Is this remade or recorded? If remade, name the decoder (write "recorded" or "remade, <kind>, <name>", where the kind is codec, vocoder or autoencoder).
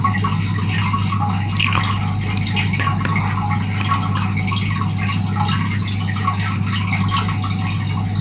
recorded